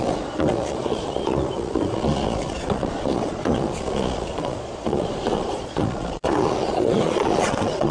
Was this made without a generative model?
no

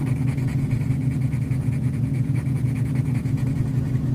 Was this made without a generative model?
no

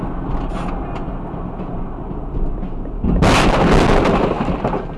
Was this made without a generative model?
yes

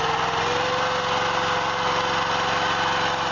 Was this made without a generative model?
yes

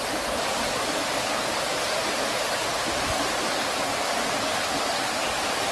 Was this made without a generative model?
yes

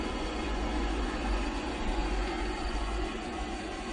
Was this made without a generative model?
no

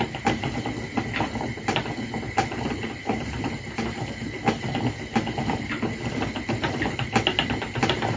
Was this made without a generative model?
yes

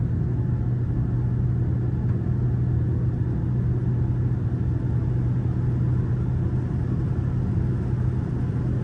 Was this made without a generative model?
yes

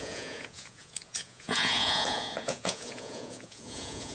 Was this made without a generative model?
no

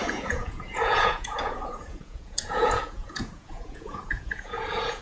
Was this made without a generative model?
no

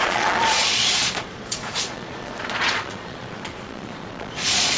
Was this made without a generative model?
no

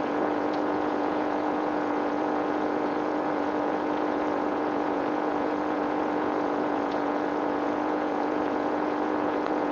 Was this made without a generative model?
no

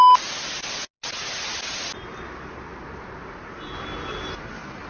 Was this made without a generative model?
yes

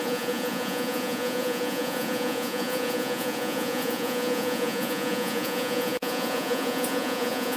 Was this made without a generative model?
no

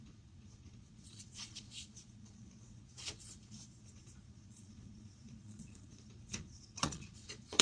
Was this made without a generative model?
no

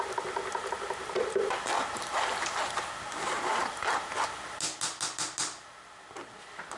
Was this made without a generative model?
yes